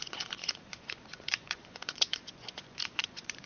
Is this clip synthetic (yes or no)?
yes